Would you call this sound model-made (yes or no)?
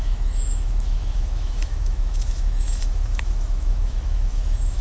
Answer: yes